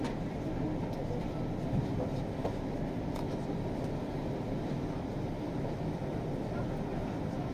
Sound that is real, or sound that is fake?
real